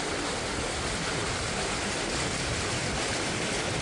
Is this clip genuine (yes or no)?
yes